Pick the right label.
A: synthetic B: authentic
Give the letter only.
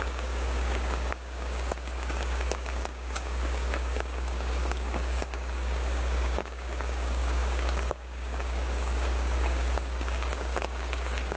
A